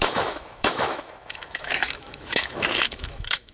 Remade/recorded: remade